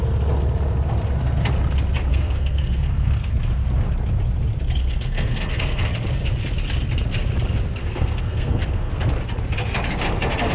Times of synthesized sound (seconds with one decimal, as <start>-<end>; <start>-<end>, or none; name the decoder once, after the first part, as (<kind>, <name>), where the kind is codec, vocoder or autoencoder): 2.1-3.3 (codec, SNAC); 4.8-5.9; 7.8-8.9